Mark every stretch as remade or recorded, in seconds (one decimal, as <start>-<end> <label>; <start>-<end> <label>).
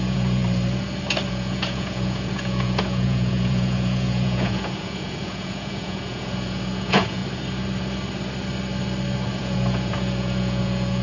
0.0-0.4 remade; 0.4-1.3 recorded; 1.3-7.2 remade; 7.2-9.3 recorded; 9.3-11.0 remade